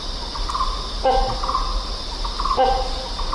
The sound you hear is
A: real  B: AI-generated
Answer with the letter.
A